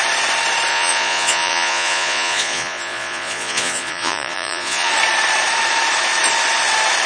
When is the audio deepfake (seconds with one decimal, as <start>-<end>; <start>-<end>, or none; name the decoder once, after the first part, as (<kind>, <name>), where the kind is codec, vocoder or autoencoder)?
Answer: 0.7-4.9 (vocoder, Vocos)